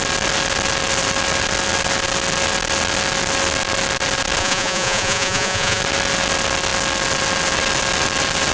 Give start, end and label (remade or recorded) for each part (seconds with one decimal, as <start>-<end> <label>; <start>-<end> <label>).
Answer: 0.0-4.4 recorded; 4.4-5.8 remade; 5.8-8.5 recorded